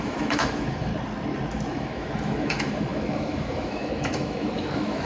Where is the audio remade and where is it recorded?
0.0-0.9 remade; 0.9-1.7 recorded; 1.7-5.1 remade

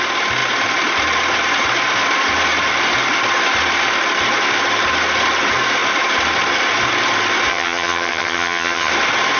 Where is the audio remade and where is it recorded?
0.0-7.5 recorded; 7.5-8.9 remade; 8.9-9.4 recorded

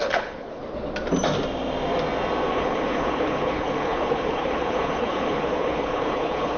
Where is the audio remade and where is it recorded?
0.0-0.6 remade; 0.6-2.5 recorded; 2.5-6.6 remade

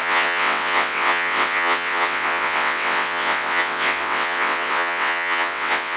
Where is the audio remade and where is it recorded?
0.0-6.0 remade